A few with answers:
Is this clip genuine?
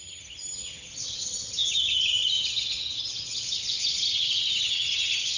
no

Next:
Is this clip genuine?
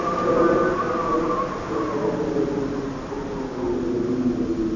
yes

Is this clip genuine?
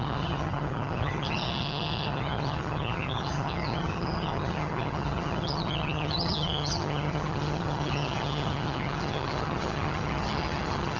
no